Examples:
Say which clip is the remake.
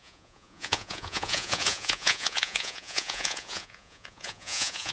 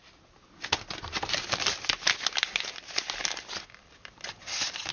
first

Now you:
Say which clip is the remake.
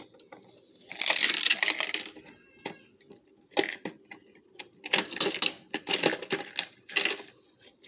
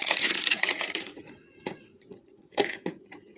second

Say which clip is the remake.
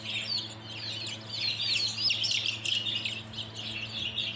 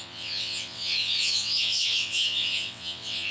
second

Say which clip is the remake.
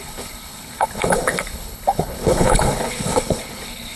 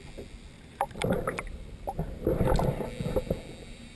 first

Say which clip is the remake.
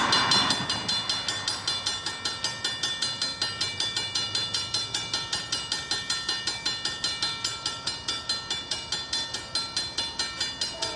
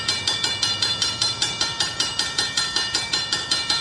second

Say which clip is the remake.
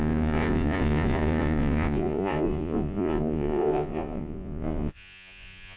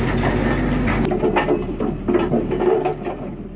first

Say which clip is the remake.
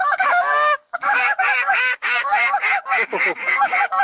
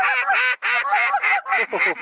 first